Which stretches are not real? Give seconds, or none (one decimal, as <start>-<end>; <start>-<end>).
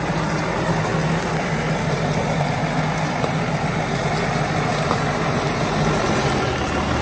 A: none